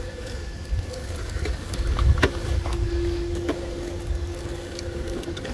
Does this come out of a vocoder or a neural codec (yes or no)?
yes